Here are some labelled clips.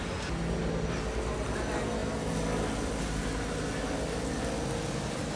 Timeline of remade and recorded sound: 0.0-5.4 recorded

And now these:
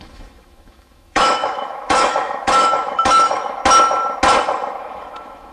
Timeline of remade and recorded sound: 0.0-3.6 remade; 3.6-4.8 recorded; 4.8-5.5 remade